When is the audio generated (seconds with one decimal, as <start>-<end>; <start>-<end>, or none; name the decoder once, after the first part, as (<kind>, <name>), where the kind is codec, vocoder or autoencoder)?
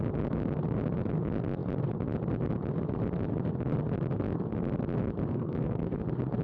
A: 5.3-6.0 (codec, SNAC)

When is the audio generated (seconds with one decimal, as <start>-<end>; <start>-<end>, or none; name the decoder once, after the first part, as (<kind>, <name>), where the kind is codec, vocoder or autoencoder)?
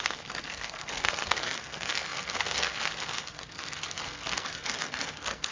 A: 0.0-5.5 (codec, SNAC)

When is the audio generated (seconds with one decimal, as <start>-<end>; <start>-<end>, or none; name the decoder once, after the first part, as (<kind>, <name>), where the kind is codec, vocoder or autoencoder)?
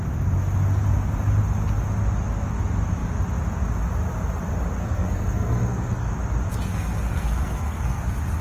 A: 4.8-6.1 (codec, SNAC); 6.7-8.0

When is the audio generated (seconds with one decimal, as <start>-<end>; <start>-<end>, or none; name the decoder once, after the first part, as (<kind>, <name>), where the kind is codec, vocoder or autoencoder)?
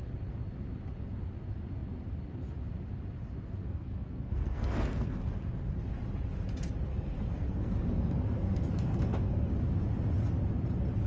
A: 3.6-5.3 (codec, SNAC); 6.9-9.5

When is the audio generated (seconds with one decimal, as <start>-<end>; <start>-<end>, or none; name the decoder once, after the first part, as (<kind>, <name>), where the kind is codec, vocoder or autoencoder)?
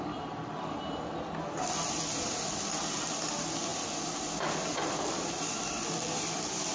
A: none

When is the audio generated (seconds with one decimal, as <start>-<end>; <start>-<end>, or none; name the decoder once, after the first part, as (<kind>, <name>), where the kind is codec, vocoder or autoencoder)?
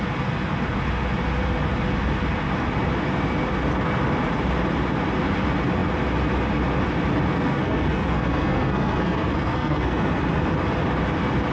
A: 7.3-10.2 (codec, SNAC)